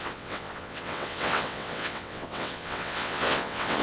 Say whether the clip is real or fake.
fake